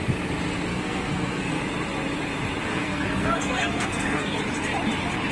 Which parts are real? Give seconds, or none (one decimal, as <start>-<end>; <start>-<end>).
0.0-0.7; 1.6-2.7; 4.4-5.3

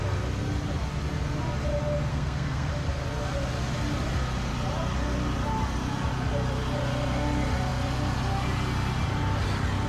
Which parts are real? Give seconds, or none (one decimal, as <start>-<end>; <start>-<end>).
0.0-2.1; 2.7-9.9

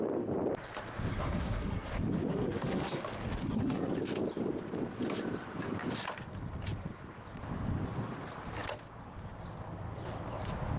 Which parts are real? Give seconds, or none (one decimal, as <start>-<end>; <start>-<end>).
0.0-1.1; 1.9-2.3; 3.0-3.4; 3.9-10.8